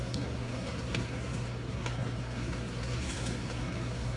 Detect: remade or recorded remade